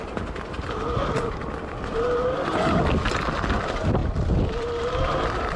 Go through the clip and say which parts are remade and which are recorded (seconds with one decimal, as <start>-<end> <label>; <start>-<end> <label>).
0.0-5.6 recorded